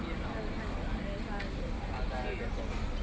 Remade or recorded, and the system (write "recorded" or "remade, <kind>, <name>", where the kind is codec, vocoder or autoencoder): recorded